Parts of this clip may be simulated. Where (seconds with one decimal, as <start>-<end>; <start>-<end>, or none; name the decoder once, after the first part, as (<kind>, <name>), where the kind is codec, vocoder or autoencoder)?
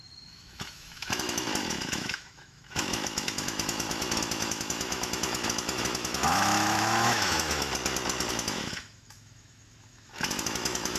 0.0-7.7 (autoencoder, DAC-VAE); 8.3-11.0